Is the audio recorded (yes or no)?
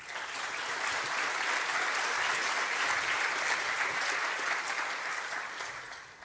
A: yes